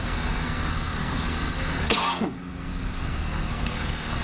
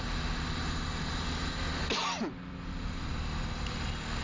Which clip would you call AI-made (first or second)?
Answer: first